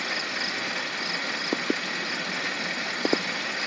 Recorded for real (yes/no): yes